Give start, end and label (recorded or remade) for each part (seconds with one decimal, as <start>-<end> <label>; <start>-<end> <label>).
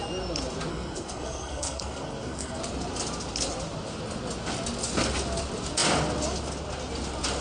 0.0-0.7 recorded; 0.7-2.6 remade; 2.6-7.4 recorded